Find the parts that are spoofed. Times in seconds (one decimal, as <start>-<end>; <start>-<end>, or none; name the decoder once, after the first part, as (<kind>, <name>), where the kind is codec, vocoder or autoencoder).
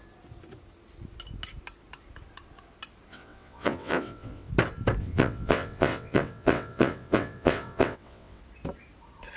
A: 3.1-4.5 (vocoder, WaveNeXt); 5.0-8.4